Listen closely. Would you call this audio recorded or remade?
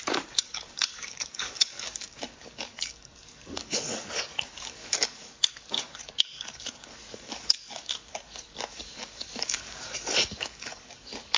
remade